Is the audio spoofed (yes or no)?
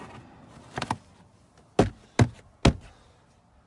no